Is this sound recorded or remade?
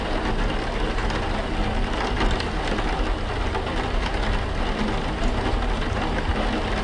recorded